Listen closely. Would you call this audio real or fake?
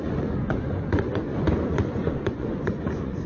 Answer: fake